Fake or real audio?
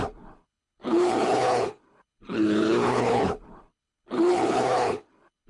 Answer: fake